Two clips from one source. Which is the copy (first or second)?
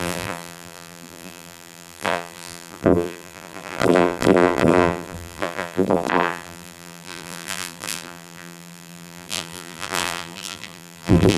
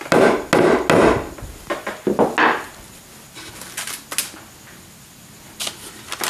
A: first